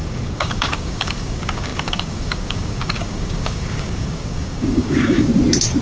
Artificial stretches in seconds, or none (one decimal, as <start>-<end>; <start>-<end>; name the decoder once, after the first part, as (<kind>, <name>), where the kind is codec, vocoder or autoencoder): 0.0-5.3 (codec, DAC)